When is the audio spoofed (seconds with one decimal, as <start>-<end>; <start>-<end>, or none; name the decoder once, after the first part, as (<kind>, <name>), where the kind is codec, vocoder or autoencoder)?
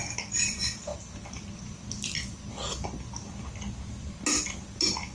none